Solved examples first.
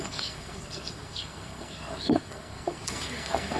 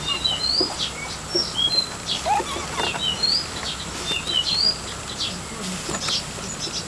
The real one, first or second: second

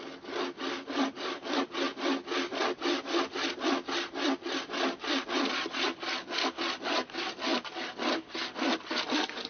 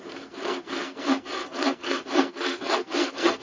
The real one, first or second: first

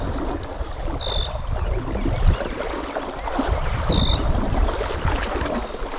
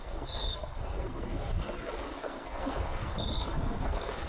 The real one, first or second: first